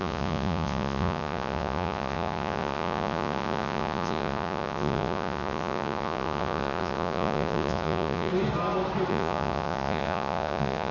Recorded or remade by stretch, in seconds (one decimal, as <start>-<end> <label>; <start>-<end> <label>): 0.0-8.3 remade; 8.3-9.1 recorded; 9.1-10.9 remade